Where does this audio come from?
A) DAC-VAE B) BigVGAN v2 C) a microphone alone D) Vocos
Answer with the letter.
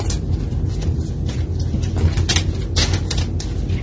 C